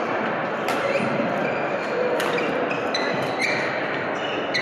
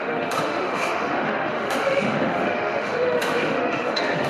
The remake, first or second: second